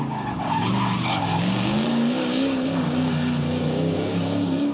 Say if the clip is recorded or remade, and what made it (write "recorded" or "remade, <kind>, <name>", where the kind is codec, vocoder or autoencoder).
remade, codec, DAC